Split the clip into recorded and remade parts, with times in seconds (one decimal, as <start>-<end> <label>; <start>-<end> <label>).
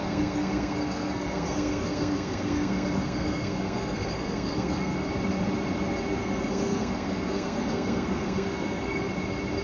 0.0-5.1 remade; 5.1-6.2 recorded; 6.2-9.1 remade; 9.1-9.6 recorded